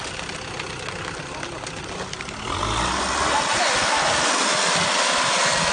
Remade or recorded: recorded